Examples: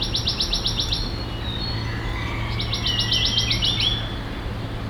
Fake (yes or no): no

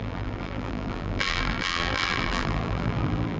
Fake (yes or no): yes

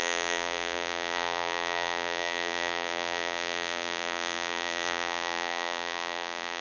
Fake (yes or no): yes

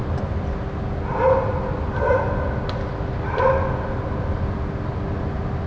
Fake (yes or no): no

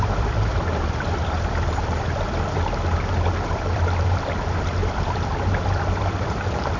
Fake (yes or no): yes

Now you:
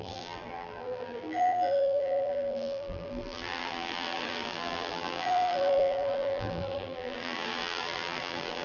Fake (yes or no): yes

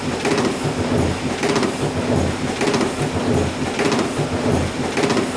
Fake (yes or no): no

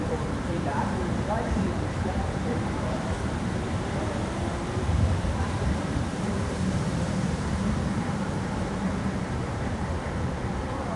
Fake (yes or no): yes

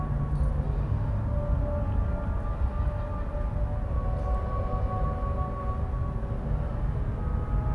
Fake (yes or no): no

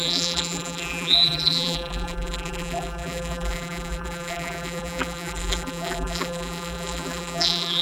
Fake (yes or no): yes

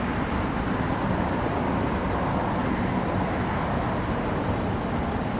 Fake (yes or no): no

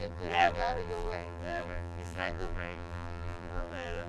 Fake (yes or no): yes